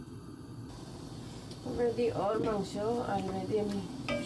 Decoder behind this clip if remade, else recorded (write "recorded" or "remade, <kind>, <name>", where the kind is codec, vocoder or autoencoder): recorded